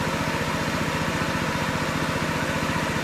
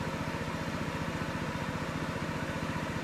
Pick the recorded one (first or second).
first